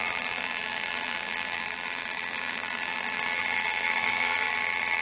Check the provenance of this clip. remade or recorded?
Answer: remade